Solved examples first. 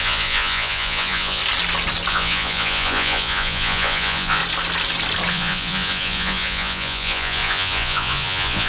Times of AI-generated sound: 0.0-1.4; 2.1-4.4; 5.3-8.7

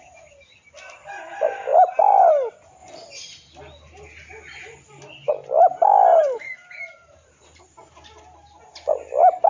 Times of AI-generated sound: 1.7-2.3; 6.1-7.6

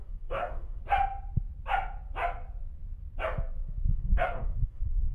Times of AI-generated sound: 0.0-0.8; 3.9-5.1